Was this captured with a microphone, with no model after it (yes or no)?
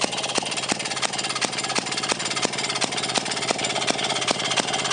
yes